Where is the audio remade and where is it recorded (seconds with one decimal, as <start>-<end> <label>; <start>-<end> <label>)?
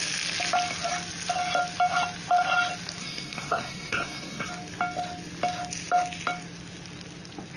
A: 0.0-3.0 recorded; 3.0-4.5 remade; 4.5-7.6 recorded